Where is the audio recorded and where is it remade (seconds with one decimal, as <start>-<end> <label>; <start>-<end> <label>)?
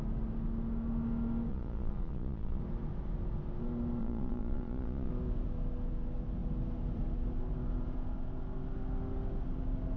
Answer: 0.0-1.5 recorded; 1.5-2.6 remade; 2.6-4.0 recorded; 4.0-5.1 remade; 5.1-10.0 recorded